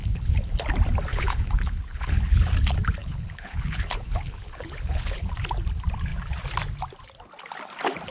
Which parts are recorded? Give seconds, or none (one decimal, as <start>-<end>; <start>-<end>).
0.5-1.1; 2.5-3.0; 5.3-8.1